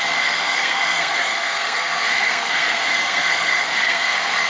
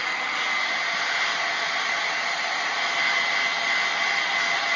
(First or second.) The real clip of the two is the second